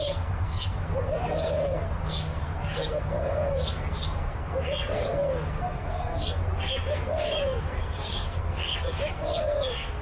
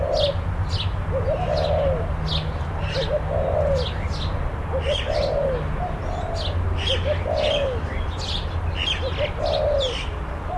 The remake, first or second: first